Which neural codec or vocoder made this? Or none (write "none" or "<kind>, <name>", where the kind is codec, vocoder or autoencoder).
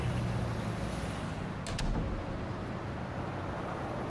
none